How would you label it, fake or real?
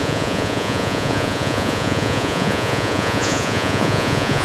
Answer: fake